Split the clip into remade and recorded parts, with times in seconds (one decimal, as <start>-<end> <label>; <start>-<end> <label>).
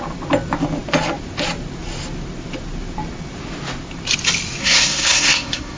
0.0-4.6 recorded; 4.6-5.8 remade